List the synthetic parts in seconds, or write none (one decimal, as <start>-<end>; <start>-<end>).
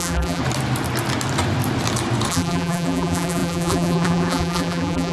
0.0-0.4; 2.3-5.1